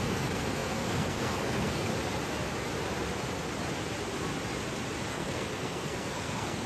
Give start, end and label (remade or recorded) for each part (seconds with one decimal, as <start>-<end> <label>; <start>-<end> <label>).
0.0-1.9 remade; 1.9-5.1 recorded; 5.1-6.7 remade